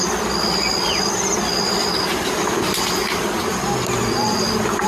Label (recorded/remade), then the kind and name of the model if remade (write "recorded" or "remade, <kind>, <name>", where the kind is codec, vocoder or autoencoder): recorded